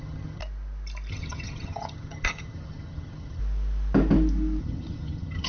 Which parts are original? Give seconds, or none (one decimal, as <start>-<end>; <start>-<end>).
0.4-1.1; 3.4-4.6